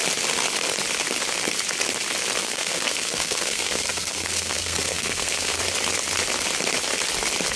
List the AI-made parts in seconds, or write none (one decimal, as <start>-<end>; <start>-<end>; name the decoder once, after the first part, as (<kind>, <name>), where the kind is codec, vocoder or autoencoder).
2.4-5.6 (codec, SNAC)